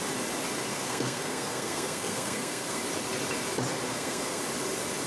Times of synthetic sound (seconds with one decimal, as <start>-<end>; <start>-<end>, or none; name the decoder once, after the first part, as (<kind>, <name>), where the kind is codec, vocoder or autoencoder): 0.7-2.8 (codec, SNAC); 3.9-4.4